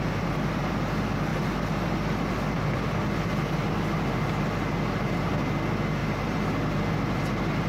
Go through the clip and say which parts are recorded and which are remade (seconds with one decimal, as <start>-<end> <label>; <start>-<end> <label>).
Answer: 0.0-1.3 recorded; 1.3-2.3 remade; 2.3-7.7 recorded